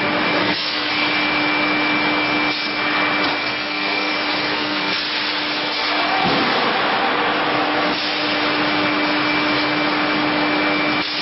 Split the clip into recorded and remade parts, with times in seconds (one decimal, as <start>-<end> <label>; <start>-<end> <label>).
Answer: 0.0-0.4 recorded; 0.4-0.9 remade; 0.9-3.4 recorded; 3.4-4.1 remade; 4.1-4.5 recorded; 4.5-5.0 remade; 5.0-11.2 recorded